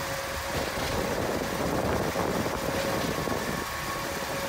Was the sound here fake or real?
real